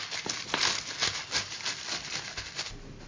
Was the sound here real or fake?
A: real